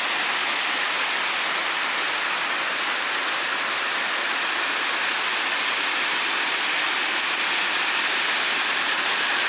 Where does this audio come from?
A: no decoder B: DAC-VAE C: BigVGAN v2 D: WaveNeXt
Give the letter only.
A